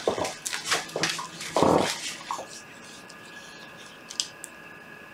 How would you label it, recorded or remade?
recorded